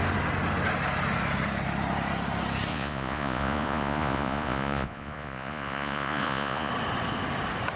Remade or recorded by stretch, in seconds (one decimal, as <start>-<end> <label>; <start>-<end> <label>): 0.0-2.7 recorded; 2.7-6.7 remade; 6.7-7.8 recorded